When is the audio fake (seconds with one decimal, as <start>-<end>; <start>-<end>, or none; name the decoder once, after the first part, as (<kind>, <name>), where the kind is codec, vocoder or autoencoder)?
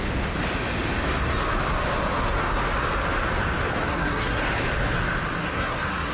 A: 3.9-4.4 (codec, SNAC); 5.4-6.1